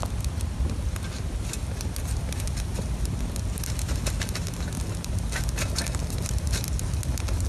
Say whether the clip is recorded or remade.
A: recorded